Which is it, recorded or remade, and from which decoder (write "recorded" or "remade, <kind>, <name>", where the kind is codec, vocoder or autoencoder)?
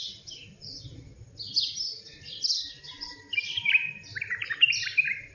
recorded